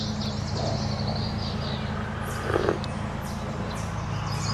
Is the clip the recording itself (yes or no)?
yes